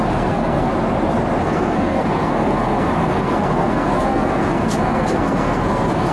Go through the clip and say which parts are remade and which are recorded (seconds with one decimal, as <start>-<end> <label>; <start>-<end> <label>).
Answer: 0.0-0.7 remade; 0.7-1.4 recorded; 1.4-6.1 remade